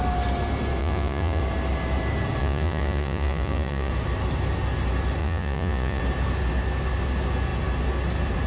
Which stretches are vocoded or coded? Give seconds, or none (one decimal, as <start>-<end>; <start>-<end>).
0.8-1.4; 2.4-3.9; 5.2-6.0